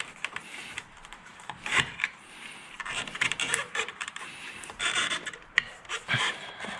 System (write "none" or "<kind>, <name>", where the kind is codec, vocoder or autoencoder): vocoder, BigVGAN v2